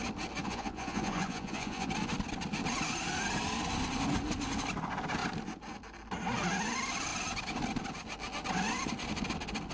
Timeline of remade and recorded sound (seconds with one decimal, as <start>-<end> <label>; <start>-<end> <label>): 0.0-0.4 recorded; 0.4-1.9 remade; 1.9-9.7 recorded